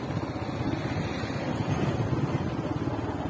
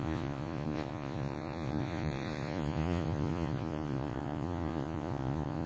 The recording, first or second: first